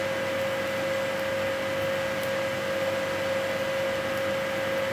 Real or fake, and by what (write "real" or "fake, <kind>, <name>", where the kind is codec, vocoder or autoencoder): real